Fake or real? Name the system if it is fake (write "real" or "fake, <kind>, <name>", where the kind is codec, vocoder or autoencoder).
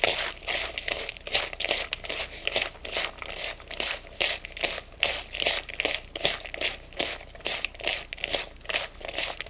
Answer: real